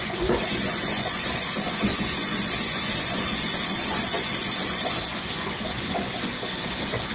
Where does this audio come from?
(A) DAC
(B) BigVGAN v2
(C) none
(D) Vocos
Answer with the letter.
D